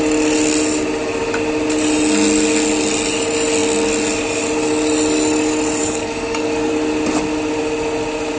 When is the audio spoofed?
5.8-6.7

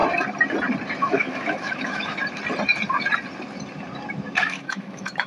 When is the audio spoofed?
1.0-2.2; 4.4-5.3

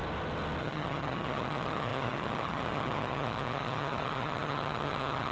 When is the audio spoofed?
0.6-5.3

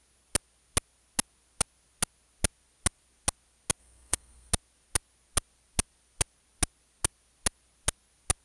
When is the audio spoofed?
3.8-4.5

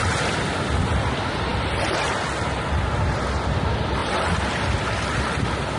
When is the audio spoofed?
4.0-4.9